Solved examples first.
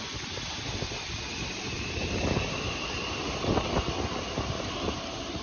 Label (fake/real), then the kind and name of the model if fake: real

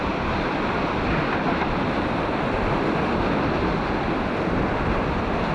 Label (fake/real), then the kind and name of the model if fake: real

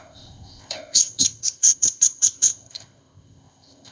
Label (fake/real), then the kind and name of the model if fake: fake, codec, ZipCodec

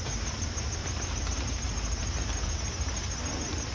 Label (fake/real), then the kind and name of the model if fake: fake, vocoder, BigVGAN v2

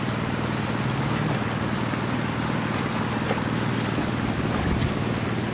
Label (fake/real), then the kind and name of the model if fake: real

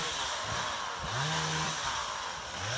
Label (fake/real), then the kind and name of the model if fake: real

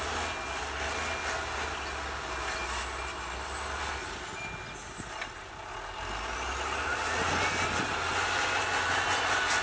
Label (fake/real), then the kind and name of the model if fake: real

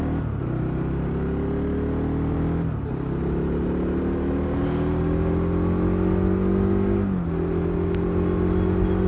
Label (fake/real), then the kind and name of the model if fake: real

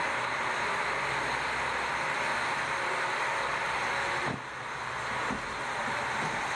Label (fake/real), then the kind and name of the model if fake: real